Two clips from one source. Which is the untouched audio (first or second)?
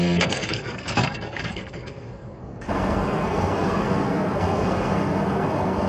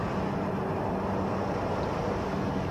second